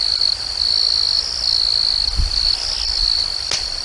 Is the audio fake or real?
real